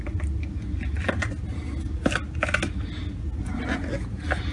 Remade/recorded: recorded